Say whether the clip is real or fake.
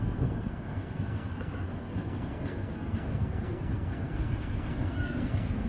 fake